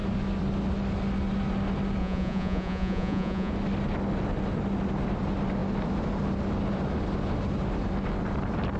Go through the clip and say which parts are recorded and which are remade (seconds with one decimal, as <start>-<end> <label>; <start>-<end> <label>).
0.0-2.0 recorded; 2.0-3.5 remade; 3.5-8.8 recorded